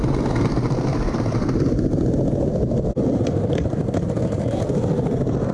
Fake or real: real